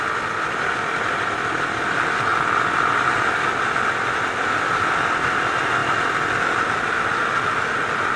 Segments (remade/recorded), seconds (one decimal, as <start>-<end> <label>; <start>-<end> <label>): 0.0-8.2 recorded